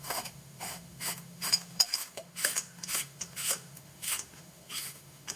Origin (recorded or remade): remade